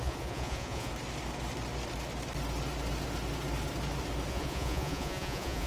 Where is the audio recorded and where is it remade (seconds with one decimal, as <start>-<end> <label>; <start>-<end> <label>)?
0.0-0.9 remade; 0.9-4.3 recorded; 4.3-5.7 remade